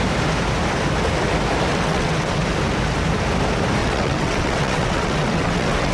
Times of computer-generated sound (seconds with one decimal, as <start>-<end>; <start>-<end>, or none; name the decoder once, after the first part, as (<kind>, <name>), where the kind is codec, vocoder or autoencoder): 1.7-2.4 (vocoder, WaveNeXt); 3.8-5.9